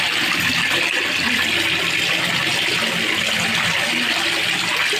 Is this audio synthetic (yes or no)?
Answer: no